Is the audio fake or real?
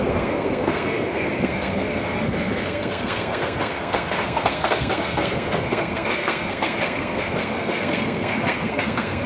fake